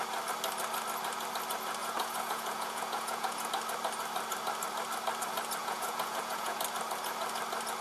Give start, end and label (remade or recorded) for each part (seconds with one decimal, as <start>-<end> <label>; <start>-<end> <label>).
0.0-1.8 recorded; 1.8-3.5 remade; 3.5-5.6 recorded; 5.6-6.6 remade; 6.6-7.8 recorded